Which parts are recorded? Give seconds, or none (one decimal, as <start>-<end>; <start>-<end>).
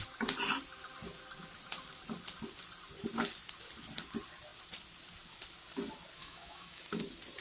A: 0.0-6.2; 6.8-7.4